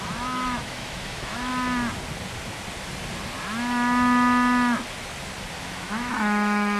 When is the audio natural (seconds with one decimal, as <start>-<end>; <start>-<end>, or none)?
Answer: 1.5-5.6